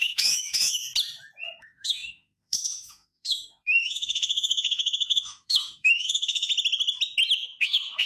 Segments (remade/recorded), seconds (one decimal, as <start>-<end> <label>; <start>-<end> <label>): 0.0-0.8 remade; 0.8-1.6 recorded; 1.6-6.5 remade; 6.5-7.6 recorded; 7.6-8.1 remade